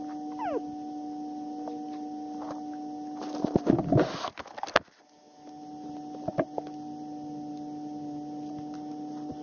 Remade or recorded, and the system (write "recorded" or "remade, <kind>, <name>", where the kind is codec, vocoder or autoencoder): recorded